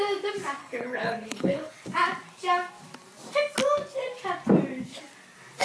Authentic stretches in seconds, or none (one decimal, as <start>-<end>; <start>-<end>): 0.0-0.6; 1.7-5.6